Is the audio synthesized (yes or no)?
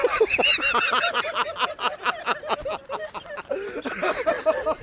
no